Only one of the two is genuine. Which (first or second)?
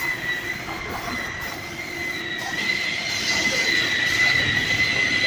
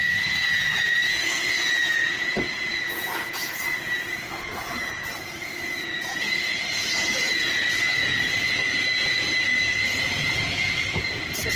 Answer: first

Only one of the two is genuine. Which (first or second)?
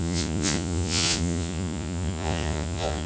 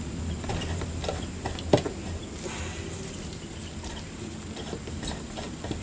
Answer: second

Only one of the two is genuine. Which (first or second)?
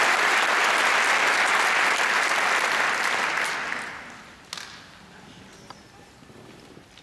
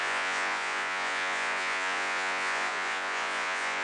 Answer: first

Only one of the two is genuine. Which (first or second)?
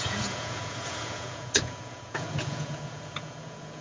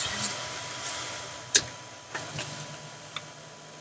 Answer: second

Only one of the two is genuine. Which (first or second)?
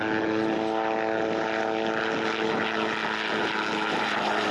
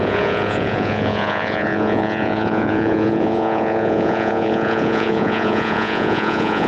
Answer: first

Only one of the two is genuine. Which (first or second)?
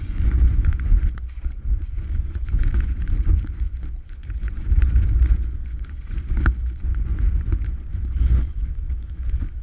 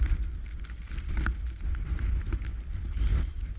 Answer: second